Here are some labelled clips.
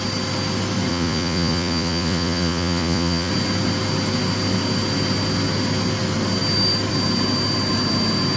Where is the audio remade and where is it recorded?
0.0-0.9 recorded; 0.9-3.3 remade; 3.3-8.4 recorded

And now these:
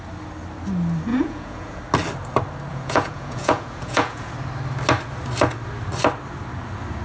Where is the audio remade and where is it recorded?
0.0-1.1 recorded; 1.1-1.8 remade; 1.8-2.7 recorded; 2.7-4.3 remade; 4.3-7.0 recorded